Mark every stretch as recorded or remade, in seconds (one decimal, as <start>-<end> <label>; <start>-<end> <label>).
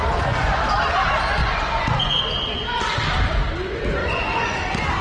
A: 0.0-0.6 remade; 0.6-1.4 recorded; 1.4-2.2 remade; 2.2-4.0 recorded; 4.0-4.6 remade; 4.6-5.0 recorded